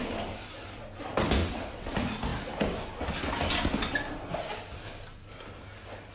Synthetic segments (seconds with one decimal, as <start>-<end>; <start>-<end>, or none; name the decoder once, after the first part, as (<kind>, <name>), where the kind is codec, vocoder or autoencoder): 1.4-1.9 (vocoder, WaveNeXt)